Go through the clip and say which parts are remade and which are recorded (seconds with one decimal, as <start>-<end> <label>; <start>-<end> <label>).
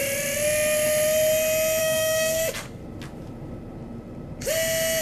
0.0-1.8 recorded; 1.8-2.8 remade; 2.8-5.0 recorded